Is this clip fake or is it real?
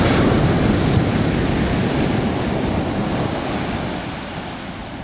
real